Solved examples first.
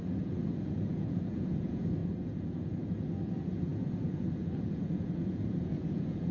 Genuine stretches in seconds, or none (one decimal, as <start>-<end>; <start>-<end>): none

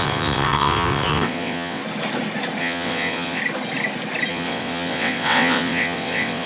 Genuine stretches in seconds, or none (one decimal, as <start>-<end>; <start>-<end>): 1.8-2.6; 3.4-4.3

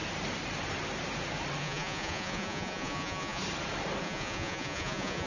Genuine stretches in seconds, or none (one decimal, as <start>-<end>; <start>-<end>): 0.0-1.6; 3.4-4.0